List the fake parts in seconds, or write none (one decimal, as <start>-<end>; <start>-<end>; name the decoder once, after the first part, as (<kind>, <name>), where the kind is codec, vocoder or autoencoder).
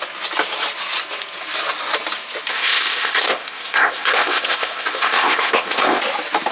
2.5-6.0 (codec, ZipCodec)